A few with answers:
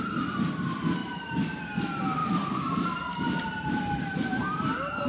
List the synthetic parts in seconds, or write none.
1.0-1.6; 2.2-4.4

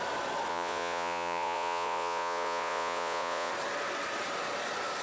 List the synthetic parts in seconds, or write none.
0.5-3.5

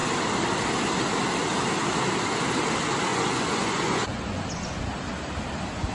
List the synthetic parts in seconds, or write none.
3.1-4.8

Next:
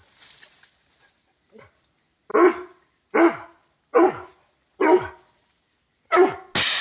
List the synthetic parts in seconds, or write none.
none